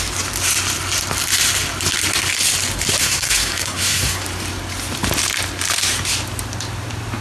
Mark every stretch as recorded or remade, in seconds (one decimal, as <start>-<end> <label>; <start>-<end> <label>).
0.0-3.0 recorded; 3.0-4.2 remade; 4.2-7.2 recorded